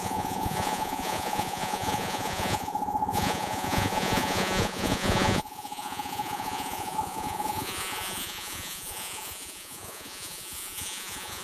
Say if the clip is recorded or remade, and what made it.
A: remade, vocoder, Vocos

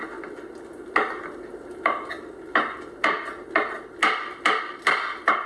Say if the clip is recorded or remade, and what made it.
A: recorded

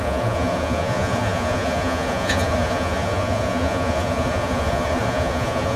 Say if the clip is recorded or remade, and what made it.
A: remade, vocoder, Vocos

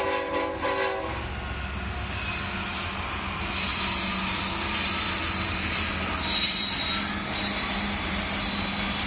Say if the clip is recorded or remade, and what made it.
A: recorded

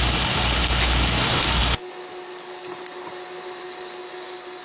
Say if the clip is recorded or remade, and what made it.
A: recorded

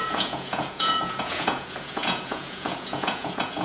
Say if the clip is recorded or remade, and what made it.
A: remade, vocoder, Vocos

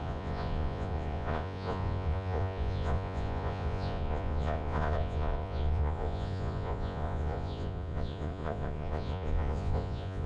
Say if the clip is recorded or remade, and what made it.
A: remade, vocoder, Vocos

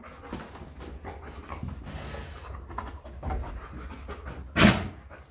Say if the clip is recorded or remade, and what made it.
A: recorded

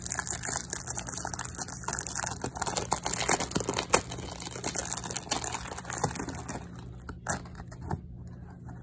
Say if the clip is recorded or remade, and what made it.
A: recorded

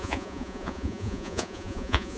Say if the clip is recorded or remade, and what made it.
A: remade, vocoder, Vocos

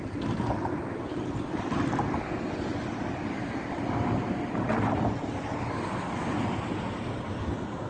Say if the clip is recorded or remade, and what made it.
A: recorded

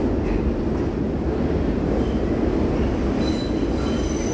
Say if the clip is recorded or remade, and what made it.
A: recorded